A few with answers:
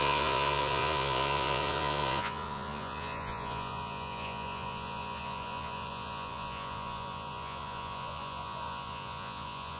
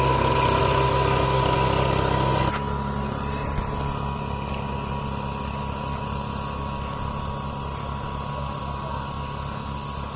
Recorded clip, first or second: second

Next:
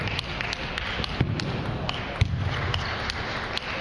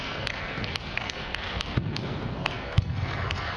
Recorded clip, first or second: first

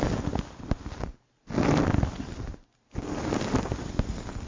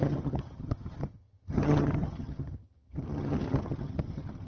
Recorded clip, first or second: first